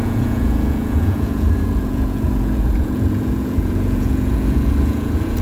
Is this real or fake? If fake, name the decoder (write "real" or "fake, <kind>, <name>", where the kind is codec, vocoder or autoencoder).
fake, vocoder, Vocos